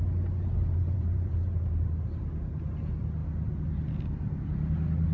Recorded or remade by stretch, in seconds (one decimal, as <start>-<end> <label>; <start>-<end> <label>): 0.0-0.8 recorded; 0.8-2.1 remade; 2.1-5.1 recorded

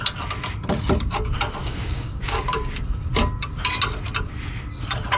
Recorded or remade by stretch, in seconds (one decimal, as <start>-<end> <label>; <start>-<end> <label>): 0.0-1.6 recorded; 1.6-2.8 remade; 2.8-5.2 recorded

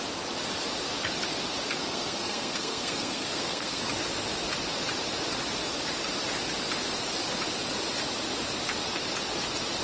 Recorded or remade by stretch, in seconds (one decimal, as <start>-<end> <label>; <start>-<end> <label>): 0.0-1.8 recorded; 1.8-3.8 remade; 3.8-9.8 recorded

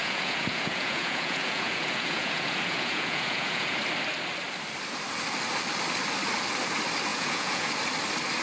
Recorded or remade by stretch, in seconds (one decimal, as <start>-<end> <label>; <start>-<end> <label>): 0.0-3.8 remade; 3.8-7.1 recorded; 7.1-7.7 remade; 7.7-8.4 recorded

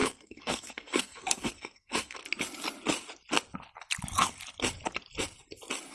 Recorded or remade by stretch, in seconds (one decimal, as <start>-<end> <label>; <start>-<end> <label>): 0.0-2.2 remade; 2.2-5.9 recorded

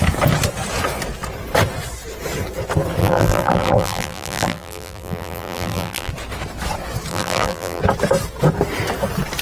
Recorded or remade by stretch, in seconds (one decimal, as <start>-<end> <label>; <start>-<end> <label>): 0.0-3.0 recorded; 3.0-6.1 remade; 6.1-7.1 recorded; 7.1-7.8 remade; 7.8-9.4 recorded